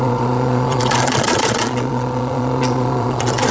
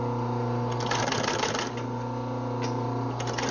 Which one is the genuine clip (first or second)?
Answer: second